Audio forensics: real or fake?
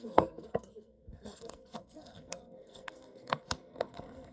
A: fake